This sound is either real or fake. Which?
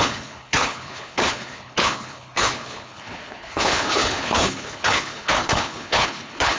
fake